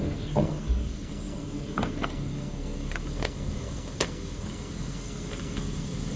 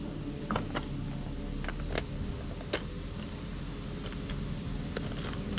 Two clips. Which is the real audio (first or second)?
second